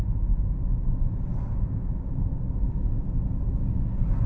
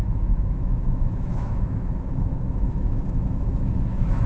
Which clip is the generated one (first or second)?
second